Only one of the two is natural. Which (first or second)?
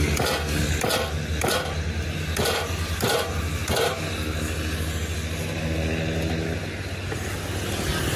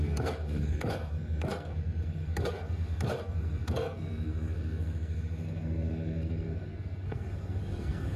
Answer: first